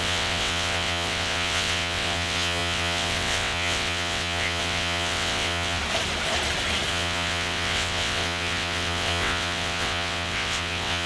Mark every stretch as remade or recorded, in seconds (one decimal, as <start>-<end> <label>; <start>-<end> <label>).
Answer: 0.0-5.8 remade; 5.8-6.9 recorded; 6.9-11.1 remade